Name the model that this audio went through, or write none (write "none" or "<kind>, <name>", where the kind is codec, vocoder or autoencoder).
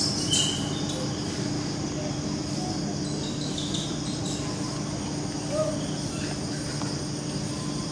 none